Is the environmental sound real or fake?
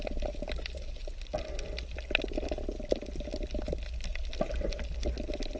real